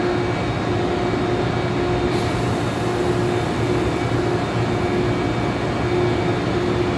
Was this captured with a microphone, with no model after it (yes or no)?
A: yes